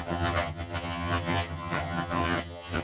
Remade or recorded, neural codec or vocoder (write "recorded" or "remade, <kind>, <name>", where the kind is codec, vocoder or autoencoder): remade, vocoder, HiFi-GAN